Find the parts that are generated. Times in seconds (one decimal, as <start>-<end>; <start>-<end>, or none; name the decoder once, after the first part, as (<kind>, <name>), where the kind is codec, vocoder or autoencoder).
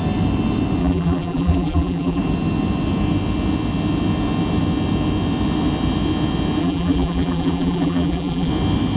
0.8-2.2 (vocoder, BigVGAN v2); 6.6-8.5